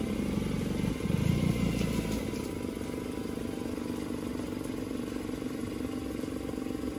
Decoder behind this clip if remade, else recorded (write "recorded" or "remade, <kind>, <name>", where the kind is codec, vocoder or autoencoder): recorded